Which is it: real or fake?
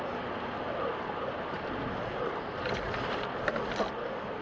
real